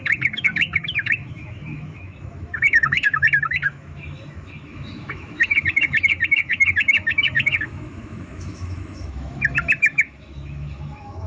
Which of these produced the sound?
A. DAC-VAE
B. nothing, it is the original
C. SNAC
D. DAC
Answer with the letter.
A